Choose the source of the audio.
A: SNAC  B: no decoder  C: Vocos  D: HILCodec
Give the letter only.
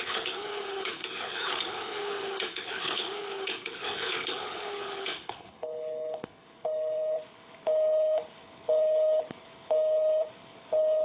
D